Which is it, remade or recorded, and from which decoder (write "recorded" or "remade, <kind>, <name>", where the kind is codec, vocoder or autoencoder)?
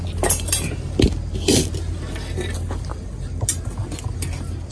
recorded